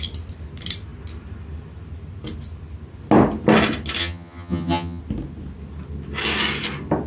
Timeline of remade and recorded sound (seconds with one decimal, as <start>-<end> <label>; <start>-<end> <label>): 0.0-4.0 recorded; 4.0-5.0 remade; 5.0-7.1 recorded